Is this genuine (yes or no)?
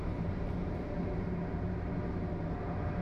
no